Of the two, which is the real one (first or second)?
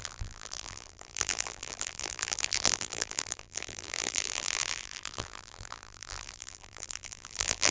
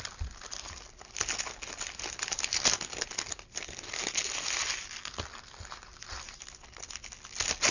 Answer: second